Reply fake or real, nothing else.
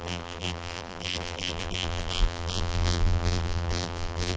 fake